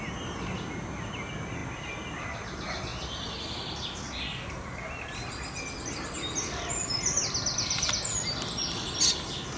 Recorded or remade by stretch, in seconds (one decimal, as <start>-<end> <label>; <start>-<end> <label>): 0.0-9.6 recorded